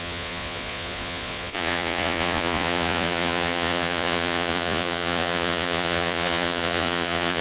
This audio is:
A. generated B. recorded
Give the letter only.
A